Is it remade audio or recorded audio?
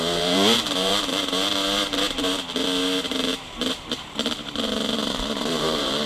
remade